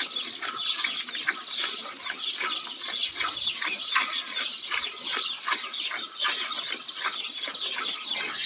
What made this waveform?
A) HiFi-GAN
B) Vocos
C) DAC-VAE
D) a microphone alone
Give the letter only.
D